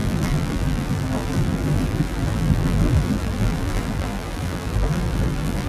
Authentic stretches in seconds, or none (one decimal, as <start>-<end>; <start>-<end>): none